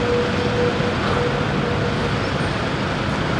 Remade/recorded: recorded